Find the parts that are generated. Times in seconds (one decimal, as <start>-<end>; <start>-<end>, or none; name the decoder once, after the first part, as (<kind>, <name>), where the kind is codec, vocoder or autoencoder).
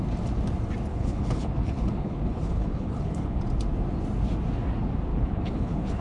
0.9-3.4 (codec, HILCodec); 5.1-6.0